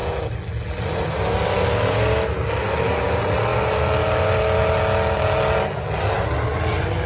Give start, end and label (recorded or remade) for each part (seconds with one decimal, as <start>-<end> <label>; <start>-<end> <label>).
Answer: 0.0-7.1 recorded